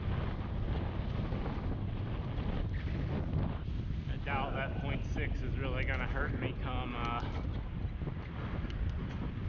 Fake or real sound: real